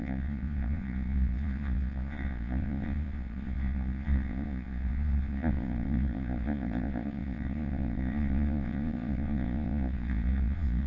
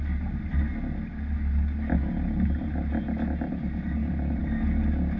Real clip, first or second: second